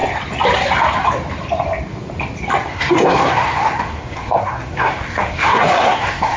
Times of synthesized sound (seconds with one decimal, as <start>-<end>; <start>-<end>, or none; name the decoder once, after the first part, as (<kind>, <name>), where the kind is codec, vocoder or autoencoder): 2.7-6.4 (codec, SNAC)